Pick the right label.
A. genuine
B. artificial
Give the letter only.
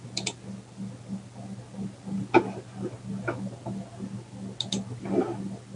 A